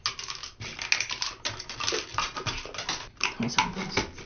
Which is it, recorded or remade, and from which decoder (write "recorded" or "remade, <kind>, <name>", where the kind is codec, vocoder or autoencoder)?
recorded